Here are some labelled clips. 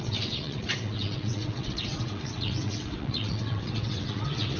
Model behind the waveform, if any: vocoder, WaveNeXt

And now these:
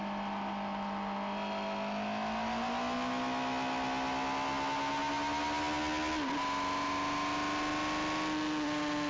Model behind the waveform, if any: none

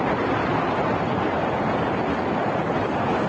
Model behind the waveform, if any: none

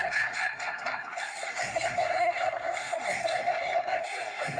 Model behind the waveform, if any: codec, SNAC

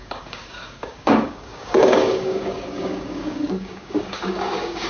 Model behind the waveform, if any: codec, DAC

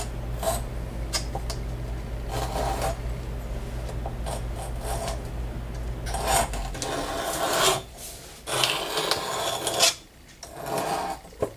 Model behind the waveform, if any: none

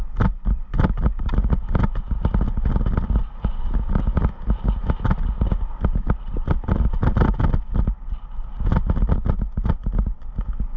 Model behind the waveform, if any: none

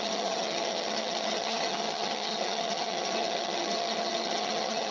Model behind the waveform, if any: vocoder, HiFi-GAN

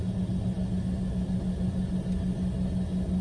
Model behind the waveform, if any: none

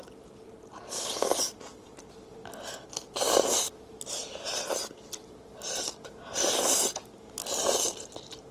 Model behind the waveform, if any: none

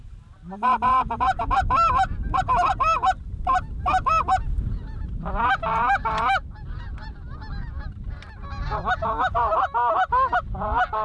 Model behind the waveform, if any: none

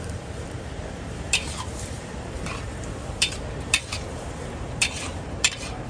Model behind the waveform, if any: vocoder, BigVGAN v2